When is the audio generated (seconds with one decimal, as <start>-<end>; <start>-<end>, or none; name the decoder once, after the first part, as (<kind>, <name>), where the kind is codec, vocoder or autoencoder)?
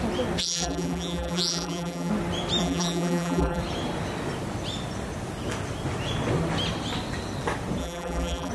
0.4-2.1 (vocoder, BigVGAN v2); 2.6-3.6; 7.8-8.5